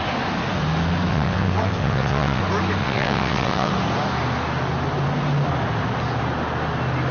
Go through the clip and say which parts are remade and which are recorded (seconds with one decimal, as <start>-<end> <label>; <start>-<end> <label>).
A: 0.0-1.1 recorded; 1.1-2.4 remade; 2.4-2.8 recorded; 2.8-3.7 remade; 3.7-7.1 recorded